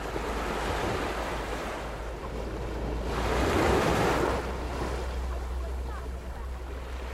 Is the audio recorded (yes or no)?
yes